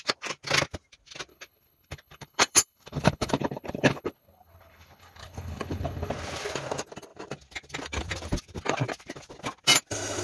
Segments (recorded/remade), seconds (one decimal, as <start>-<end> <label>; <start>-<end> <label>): 0.0-1.3 recorded; 1.3-6.1 remade; 6.1-10.2 recorded